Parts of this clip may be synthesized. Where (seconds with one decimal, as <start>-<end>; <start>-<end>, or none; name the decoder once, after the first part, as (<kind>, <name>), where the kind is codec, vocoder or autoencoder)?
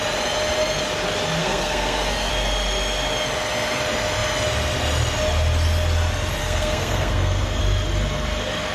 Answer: 1.4-2.3 (codec, SNAC); 6.4-7.6